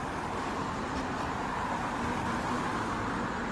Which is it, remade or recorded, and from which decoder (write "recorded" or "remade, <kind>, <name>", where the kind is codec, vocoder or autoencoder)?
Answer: recorded